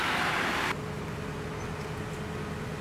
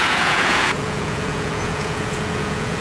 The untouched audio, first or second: first